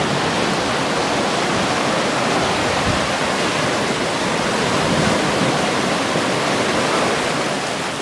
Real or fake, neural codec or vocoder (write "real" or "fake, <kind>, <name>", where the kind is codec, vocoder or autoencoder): real